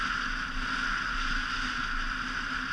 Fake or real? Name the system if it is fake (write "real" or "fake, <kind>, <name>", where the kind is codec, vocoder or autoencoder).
real